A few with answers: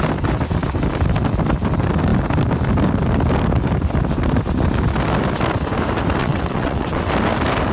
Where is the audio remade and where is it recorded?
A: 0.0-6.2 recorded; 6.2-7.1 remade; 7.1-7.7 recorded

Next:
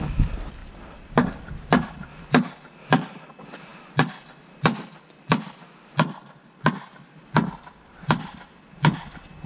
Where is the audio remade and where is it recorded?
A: 0.0-9.5 recorded

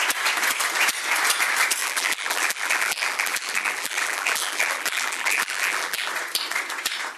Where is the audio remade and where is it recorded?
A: 0.0-1.8 recorded; 1.8-6.1 remade; 6.1-7.2 recorded

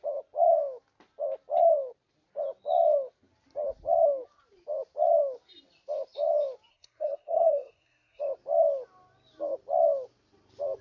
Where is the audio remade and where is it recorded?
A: 0.0-6.7 recorded; 6.7-8.2 remade; 8.2-10.8 recorded

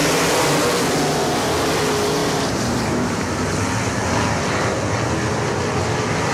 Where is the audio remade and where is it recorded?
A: 0.0-2.2 recorded; 2.2-3.6 remade; 3.6-6.3 recorded

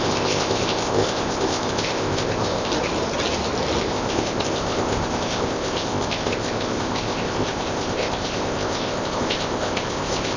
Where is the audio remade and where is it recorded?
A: 0.0-2.7 remade; 2.7-3.8 recorded; 3.8-10.4 remade

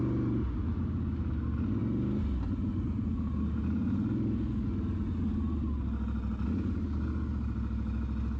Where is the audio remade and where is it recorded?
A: 0.0-8.4 recorded